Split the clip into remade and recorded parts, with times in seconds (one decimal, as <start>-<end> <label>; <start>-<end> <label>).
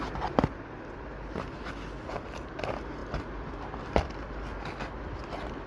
0.0-5.7 recorded